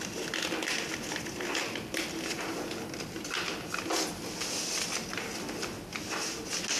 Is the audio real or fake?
real